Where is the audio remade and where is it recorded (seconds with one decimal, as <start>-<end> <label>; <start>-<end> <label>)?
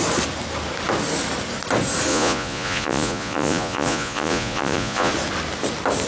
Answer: 0.0-2.1 recorded; 2.1-5.1 remade; 5.1-6.1 recorded